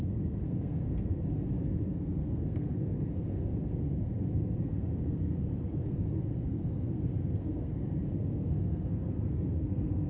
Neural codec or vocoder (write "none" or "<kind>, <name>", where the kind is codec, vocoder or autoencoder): codec, SNAC